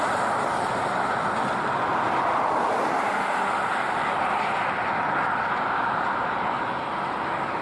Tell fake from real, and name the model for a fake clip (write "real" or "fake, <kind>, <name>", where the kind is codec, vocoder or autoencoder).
real